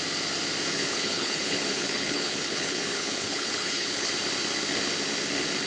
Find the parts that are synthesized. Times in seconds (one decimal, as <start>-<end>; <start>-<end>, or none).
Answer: 0.7-4.1